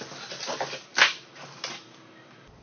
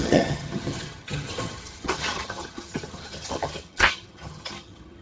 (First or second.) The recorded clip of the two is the first